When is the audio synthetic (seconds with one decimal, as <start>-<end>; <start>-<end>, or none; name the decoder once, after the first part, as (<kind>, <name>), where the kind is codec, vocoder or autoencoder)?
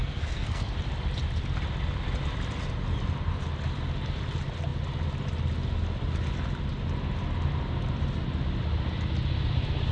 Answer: 0.0-0.7 (codec, SNAC)